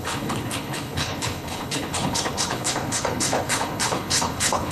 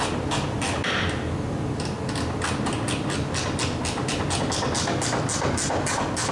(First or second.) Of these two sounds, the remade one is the first